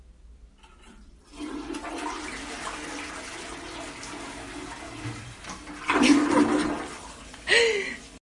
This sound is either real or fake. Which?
real